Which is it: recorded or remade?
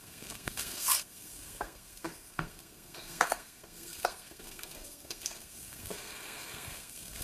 remade